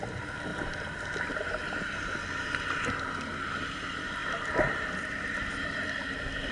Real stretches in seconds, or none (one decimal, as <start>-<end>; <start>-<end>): 0.0-6.5